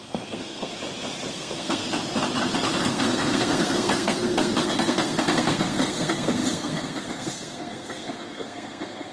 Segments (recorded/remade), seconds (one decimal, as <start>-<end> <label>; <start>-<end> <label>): 0.0-0.7 remade; 0.7-1.3 recorded; 1.3-1.8 remade; 1.8-2.8 recorded; 2.8-9.1 remade